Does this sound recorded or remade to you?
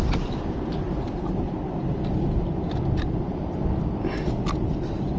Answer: recorded